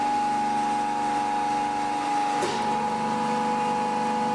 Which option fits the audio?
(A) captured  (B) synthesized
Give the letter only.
A